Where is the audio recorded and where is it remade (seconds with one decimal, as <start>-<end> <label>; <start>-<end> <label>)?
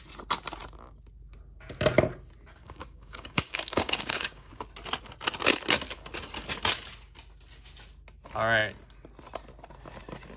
0.0-2.6 recorded; 2.6-4.5 remade; 4.5-10.4 recorded